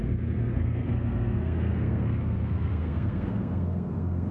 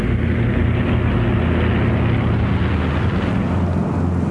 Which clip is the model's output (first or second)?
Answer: first